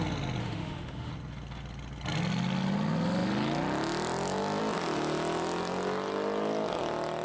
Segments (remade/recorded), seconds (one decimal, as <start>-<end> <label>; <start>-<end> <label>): 0.0-0.4 recorded; 0.4-1.1 remade; 1.1-7.2 recorded